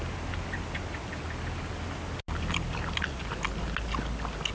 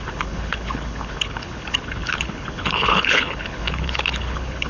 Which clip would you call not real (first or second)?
second